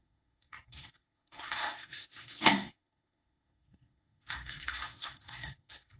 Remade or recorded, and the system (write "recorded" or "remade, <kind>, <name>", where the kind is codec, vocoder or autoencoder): remade, codec, SNAC